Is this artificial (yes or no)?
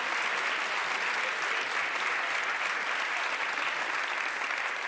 no